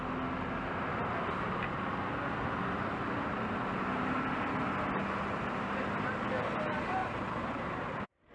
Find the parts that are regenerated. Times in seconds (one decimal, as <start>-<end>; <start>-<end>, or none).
7.0-8.3